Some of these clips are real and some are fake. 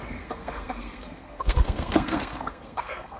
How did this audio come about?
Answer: fake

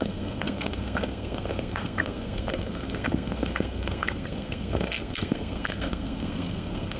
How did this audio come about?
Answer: fake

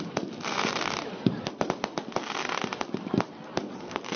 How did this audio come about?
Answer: real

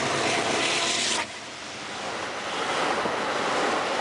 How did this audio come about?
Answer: real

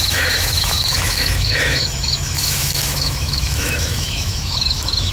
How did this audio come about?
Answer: fake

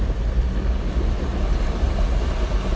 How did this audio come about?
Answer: real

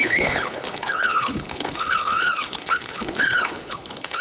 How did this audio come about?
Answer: fake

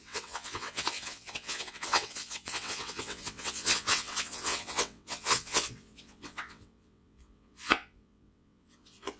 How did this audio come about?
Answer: fake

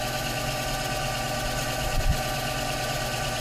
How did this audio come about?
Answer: real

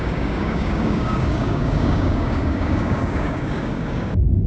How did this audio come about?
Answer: fake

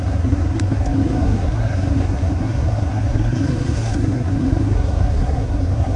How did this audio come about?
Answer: fake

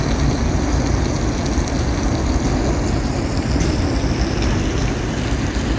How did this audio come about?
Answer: real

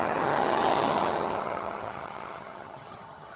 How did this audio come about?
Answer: fake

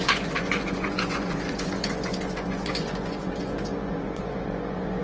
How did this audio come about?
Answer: fake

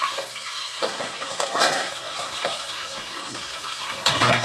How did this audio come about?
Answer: fake